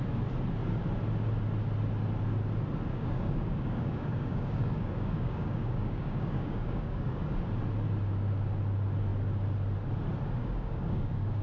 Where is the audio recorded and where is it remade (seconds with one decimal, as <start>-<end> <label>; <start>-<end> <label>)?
0.0-2.9 recorded; 2.9-7.4 remade; 7.4-10.4 recorded; 10.4-11.4 remade